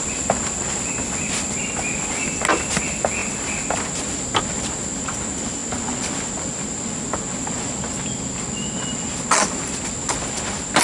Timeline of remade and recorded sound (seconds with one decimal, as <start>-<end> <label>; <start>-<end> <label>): 0.0-10.8 recorded